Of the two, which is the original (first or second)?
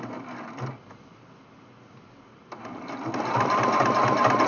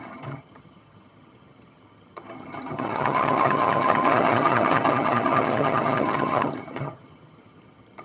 first